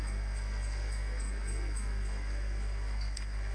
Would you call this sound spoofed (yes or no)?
yes